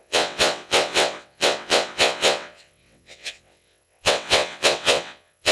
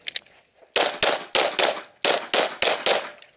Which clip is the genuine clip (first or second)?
second